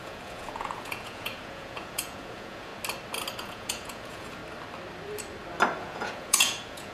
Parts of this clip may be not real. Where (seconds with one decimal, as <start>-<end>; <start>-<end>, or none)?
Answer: 0.0-2.7; 3.4-4.4; 5.8-6.9